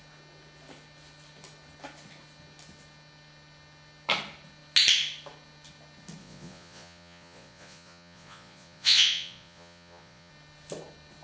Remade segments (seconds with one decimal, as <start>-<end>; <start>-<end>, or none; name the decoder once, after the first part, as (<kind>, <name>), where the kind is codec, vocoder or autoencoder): 6.2-10.3 (vocoder, Vocos)